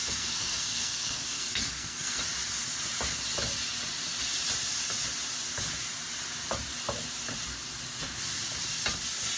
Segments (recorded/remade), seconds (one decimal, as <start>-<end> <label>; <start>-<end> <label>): 0.0-2.2 remade; 2.2-9.4 recorded